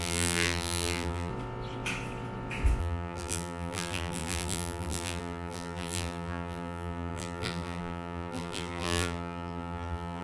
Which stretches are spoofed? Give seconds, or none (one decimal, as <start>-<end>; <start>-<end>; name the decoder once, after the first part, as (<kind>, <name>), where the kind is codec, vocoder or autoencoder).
0.0-1.3 (vocoder, BigVGAN v2); 2.8-10.2